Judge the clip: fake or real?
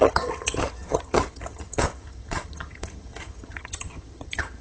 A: fake